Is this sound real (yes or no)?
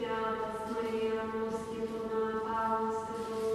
yes